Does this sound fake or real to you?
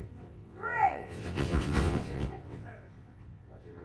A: fake